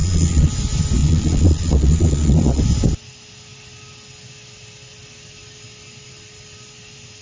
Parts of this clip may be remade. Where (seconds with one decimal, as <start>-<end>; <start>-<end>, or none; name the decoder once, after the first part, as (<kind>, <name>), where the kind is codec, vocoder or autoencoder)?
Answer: 0.0-0.5 (vocoder, Vocos); 1.0-2.6